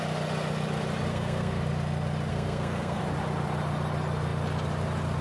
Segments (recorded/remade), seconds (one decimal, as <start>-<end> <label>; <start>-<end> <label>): 0.0-1.1 recorded; 1.1-1.6 remade; 1.6-2.3 recorded; 2.3-3.0 remade; 3.0-5.2 recorded